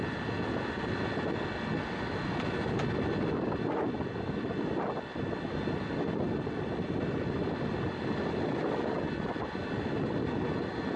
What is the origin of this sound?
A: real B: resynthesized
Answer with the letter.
A